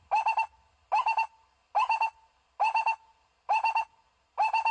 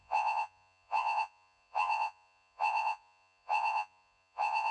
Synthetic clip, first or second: second